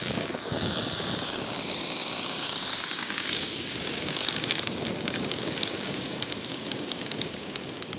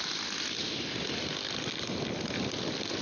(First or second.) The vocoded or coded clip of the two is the first